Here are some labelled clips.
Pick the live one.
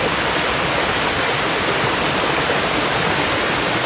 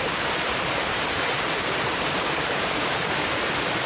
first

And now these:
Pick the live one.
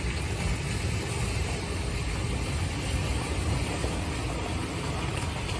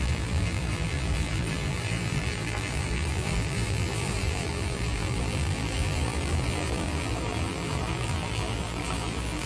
first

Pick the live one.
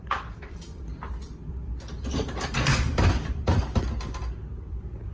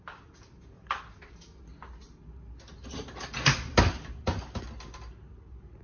second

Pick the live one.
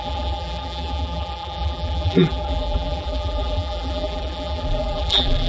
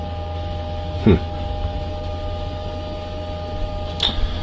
second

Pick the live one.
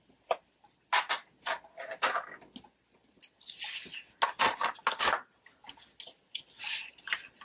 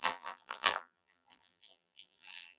first